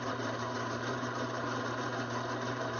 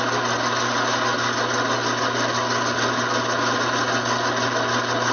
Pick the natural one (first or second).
second